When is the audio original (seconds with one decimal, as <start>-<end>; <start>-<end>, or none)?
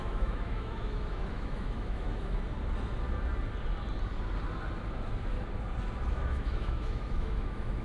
2.4-6.1